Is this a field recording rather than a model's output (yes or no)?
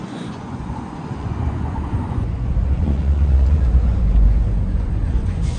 no